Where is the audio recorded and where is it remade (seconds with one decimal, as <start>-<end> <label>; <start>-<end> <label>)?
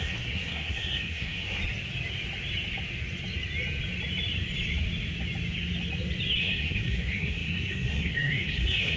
0.0-1.6 remade; 1.6-6.4 recorded; 6.4-9.0 remade